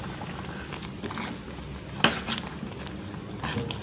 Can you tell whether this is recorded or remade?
recorded